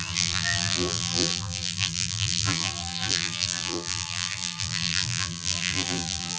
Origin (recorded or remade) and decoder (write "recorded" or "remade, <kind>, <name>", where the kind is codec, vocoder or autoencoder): remade, vocoder, BigVGAN v2